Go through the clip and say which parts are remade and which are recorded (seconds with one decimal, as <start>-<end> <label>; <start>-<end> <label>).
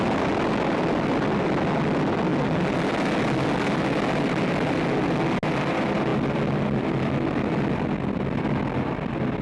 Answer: 0.0-9.4 recorded